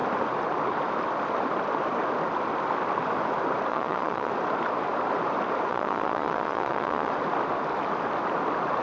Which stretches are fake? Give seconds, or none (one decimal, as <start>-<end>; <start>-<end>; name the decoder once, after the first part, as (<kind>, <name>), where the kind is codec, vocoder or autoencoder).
3.7-4.3 (vocoder, Vocos); 5.7-7.1